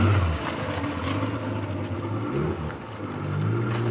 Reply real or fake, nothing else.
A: real